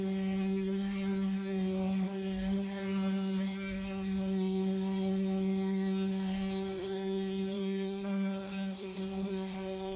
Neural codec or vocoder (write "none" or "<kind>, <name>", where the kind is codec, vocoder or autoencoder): codec, SNAC